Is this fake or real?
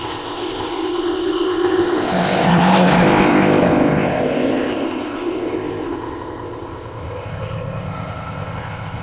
fake